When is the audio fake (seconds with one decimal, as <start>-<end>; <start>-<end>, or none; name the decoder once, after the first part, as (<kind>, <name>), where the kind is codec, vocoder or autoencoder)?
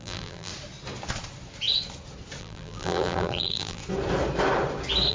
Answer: 0.0-0.5 (vocoder, BigVGAN v2); 2.4-3.8